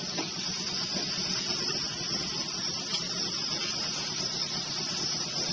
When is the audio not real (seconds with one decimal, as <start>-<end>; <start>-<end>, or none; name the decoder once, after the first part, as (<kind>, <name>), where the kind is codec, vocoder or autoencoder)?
none